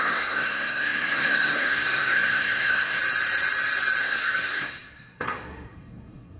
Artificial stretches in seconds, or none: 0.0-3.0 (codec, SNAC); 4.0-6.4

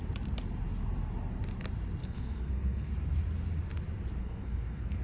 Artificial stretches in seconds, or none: 2.0-2.9 (codec, SNAC); 4.2-5.0

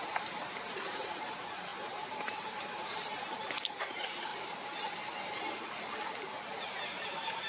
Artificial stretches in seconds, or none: 0.0-4.3 (vocoder, BigVGAN v2); 6.6-7.5

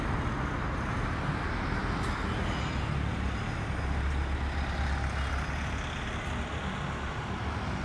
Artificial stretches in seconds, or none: none

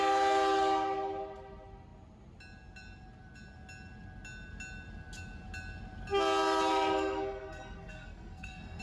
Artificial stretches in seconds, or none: 6.7-8.8 (codec, SNAC)